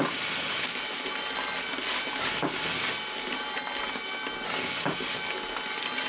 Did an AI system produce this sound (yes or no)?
no